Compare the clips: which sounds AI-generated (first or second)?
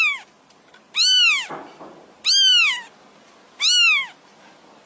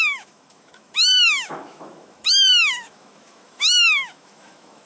second